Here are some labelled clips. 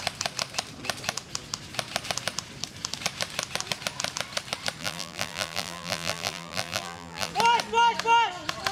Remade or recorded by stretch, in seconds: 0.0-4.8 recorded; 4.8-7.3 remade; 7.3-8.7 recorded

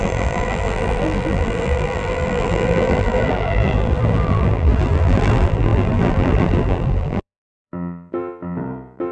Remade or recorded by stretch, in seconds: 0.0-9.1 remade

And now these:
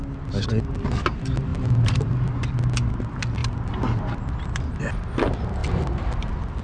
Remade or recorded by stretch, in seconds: 0.0-1.5 recorded; 1.5-2.1 remade; 2.1-6.6 recorded